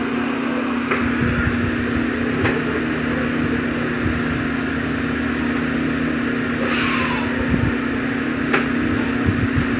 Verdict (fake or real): real